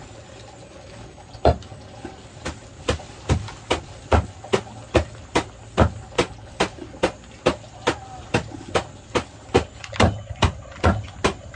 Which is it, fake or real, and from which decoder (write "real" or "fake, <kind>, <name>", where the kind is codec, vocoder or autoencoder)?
real